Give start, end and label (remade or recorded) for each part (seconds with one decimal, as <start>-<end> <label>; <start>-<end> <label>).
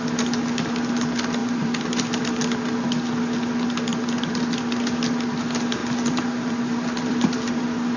0.0-1.4 recorded; 1.4-2.2 remade; 2.2-3.9 recorded; 3.9-4.8 remade; 4.8-5.8 recorded; 5.8-7.6 remade; 7.6-8.0 recorded